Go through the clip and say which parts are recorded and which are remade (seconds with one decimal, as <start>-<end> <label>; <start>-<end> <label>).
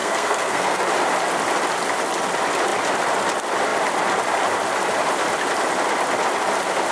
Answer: 0.0-0.8 remade; 0.8-6.9 recorded